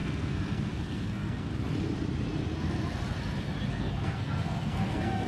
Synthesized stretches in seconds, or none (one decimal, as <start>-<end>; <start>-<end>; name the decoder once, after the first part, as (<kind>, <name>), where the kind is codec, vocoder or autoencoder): 0.0-1.5 (codec, SNAC); 3.7-5.3